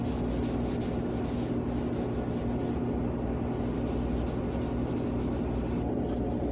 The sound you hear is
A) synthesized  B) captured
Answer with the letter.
B